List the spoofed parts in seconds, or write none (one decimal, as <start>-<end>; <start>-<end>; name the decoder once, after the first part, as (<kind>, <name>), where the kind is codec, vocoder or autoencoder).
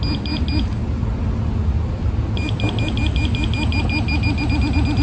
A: none